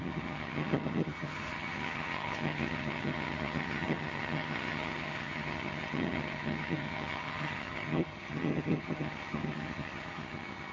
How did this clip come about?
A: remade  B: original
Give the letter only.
A